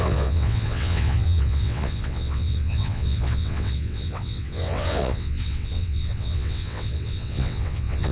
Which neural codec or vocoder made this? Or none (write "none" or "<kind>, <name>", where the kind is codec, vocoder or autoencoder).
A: vocoder, WaveNeXt